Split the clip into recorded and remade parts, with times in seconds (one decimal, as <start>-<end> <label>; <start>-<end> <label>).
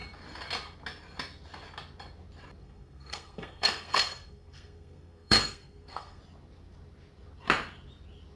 0.0-2.6 recorded; 2.6-6.2 remade; 6.2-8.4 recorded